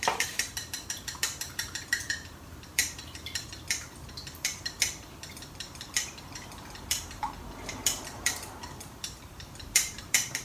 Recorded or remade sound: remade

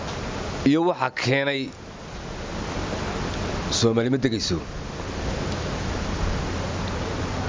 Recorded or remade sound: recorded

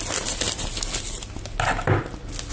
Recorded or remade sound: recorded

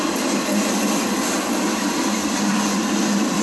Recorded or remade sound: remade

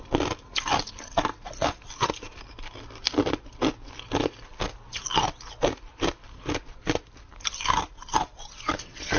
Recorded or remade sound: recorded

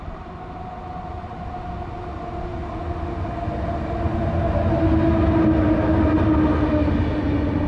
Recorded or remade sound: recorded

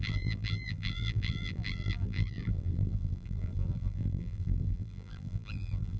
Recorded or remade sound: remade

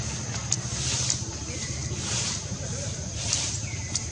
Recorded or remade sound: recorded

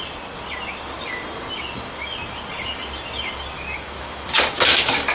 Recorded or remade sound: recorded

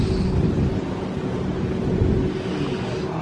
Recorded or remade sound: recorded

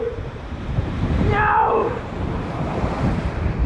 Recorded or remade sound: remade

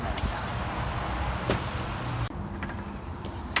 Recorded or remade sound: recorded